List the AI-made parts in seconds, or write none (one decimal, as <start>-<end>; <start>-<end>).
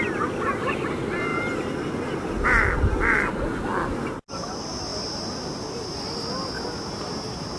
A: none